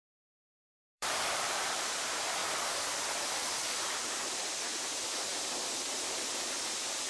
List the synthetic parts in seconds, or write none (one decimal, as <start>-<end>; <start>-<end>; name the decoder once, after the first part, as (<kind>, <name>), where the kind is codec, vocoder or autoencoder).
0.8-1.9 (vocoder, BigVGAN v2); 2.4-2.9; 3.4-4.8